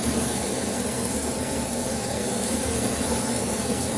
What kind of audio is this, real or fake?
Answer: fake